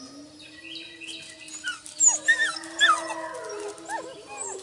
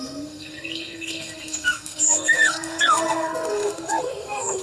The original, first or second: first